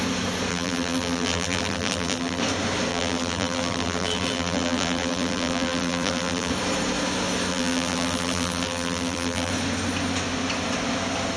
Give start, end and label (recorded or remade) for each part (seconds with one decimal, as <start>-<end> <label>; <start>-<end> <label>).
0.0-0.5 recorded; 0.5-2.4 remade; 2.4-2.9 recorded; 2.9-6.5 remade; 6.5-7.5 recorded; 7.5-9.5 remade; 9.5-11.4 recorded